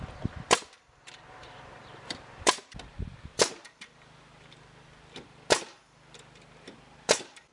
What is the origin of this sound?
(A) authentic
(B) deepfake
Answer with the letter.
B